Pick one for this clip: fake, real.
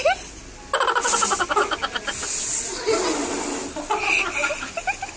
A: real